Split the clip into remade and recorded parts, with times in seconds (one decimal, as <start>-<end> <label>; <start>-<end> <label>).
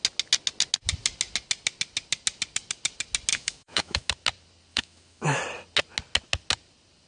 0.0-3.3 recorded; 3.3-4.1 remade; 4.1-4.7 recorded; 4.7-5.4 remade; 5.4-7.1 recorded